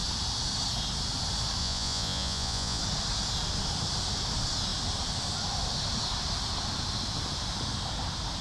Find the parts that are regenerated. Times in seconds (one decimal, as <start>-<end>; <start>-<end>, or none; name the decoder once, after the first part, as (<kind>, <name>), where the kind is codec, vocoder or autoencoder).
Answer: 1.6-2.8 (vocoder, Vocos)